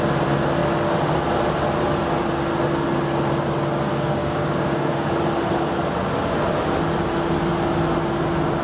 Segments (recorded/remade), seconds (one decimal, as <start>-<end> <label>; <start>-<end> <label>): 0.0-3.9 recorded; 3.9-5.1 remade; 5.1-8.6 recorded